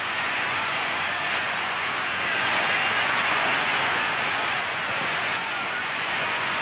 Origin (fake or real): fake